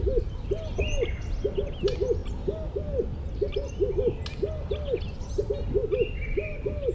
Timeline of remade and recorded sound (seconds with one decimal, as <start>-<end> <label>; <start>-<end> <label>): 0.0-6.9 recorded